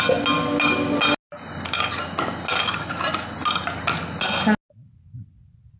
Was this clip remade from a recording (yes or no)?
no